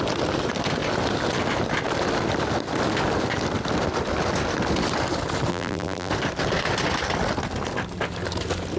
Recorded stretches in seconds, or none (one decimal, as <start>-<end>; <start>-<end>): 0.0-5.5; 6.1-8.8